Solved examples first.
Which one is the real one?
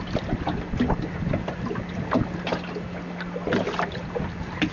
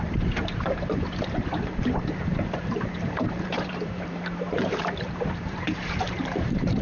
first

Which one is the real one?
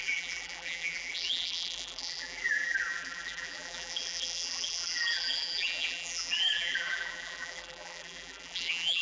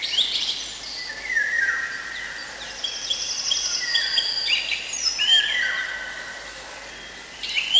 second